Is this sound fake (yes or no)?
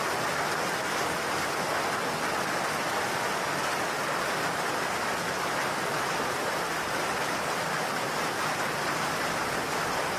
no